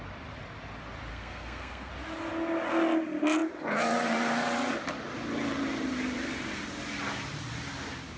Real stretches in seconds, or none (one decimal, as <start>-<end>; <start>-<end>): 0.0-1.1; 1.9-8.2